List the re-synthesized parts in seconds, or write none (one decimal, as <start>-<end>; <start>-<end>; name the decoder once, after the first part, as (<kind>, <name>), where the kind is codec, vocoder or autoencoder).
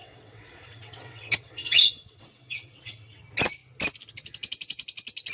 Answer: 0.0-3.2 (vocoder, WaveNeXt)